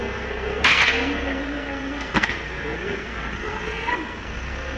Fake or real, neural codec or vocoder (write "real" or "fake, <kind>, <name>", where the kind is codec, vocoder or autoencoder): fake, codec, SNAC